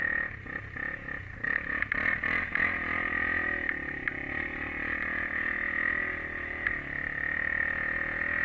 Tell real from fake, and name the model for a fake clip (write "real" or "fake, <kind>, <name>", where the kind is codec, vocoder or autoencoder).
real